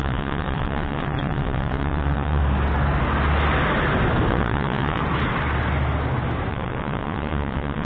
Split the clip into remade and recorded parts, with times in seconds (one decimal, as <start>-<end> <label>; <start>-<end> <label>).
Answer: 0.0-2.4 remade; 2.4-4.3 recorded; 4.3-5.0 remade; 5.0-6.5 recorded; 6.5-7.8 remade